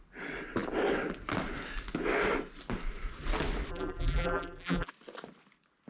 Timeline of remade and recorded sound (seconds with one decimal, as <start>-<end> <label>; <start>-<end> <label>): 0.0-3.7 recorded; 3.7-4.9 remade; 4.9-5.9 recorded